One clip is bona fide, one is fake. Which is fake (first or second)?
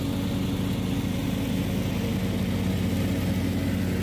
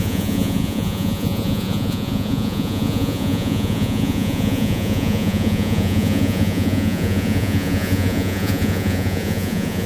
second